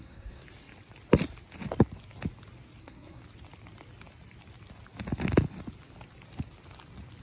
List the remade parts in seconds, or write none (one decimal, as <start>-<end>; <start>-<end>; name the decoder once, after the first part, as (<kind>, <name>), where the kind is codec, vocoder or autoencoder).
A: 0.0-0.4 (codec, SNAC); 2.8-3.2